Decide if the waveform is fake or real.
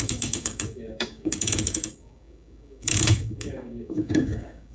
fake